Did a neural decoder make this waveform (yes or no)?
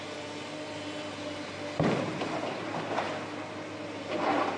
no